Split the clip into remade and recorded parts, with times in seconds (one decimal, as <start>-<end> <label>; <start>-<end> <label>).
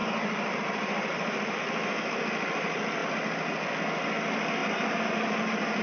0.0-1.6 remade; 1.6-4.6 recorded; 4.6-5.8 remade